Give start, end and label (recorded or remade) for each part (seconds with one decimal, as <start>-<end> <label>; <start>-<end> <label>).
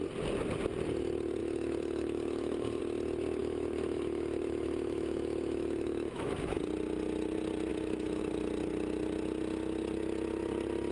0.0-1.4 recorded; 1.4-2.8 remade; 2.8-3.4 recorded; 3.4-6.3 remade; 6.3-7.7 recorded; 7.7-8.2 remade; 8.2-10.9 recorded